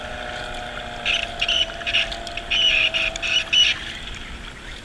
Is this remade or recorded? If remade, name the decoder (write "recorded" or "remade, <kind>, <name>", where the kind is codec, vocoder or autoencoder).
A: recorded